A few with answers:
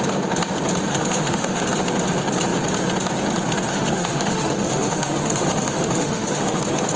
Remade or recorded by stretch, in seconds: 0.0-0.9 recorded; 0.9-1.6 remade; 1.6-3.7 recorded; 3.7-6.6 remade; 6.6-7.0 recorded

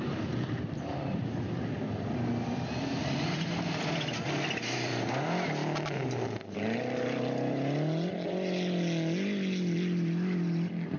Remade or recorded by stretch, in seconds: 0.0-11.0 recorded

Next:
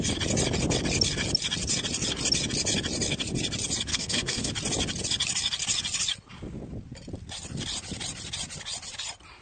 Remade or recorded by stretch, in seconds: 0.0-3.9 recorded; 3.9-4.5 remade; 4.5-9.4 recorded

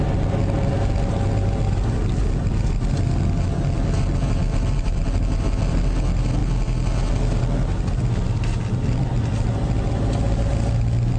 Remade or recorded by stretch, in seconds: 0.0-11.2 recorded

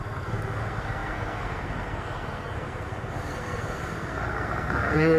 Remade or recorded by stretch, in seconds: 0.0-5.2 remade

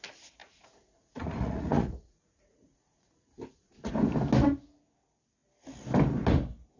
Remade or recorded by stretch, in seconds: 0.0-0.4 recorded; 0.4-3.9 remade; 3.9-6.8 recorded